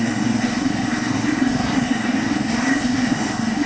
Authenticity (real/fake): fake